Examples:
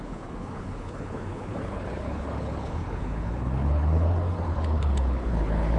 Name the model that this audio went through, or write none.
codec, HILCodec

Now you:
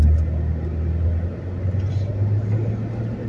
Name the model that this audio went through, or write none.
none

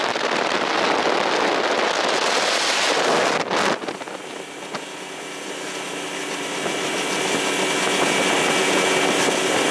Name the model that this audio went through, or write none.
none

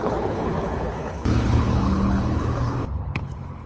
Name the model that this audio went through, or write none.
codec, HILCodec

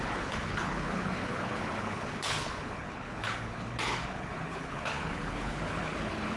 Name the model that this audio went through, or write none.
codec, HILCodec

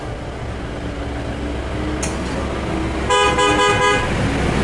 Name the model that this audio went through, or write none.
none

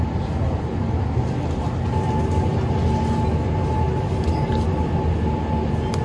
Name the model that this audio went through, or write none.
none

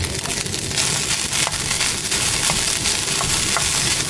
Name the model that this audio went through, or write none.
none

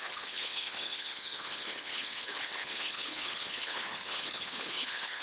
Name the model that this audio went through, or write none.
codec, HILCodec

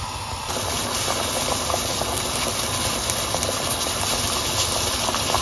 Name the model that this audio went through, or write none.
none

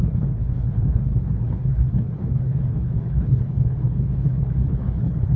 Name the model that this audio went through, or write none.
codec, HILCodec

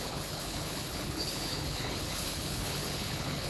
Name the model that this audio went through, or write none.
codec, HILCodec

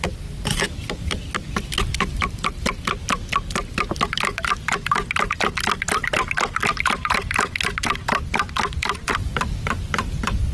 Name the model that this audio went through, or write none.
none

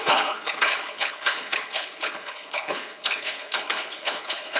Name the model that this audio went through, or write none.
codec, HILCodec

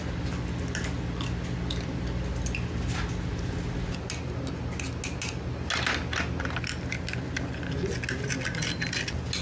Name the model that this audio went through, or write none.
none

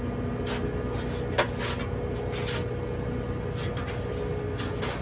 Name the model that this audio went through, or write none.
none